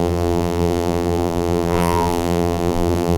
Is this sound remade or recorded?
remade